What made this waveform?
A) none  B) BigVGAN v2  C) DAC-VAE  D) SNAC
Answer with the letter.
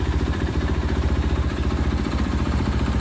B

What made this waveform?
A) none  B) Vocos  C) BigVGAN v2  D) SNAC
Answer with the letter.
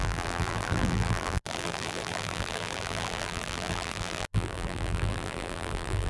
C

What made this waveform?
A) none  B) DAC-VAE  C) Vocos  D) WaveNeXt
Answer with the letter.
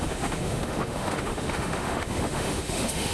B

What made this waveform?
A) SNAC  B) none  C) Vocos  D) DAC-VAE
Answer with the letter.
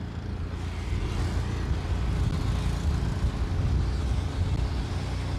B